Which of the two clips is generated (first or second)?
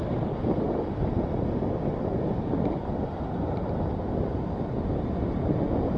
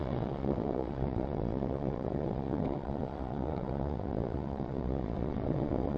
second